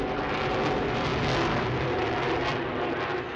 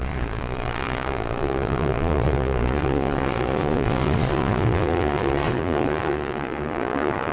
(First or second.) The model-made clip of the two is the second